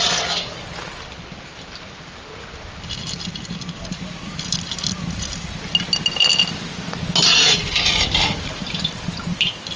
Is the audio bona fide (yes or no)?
yes